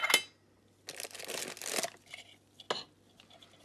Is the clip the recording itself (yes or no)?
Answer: yes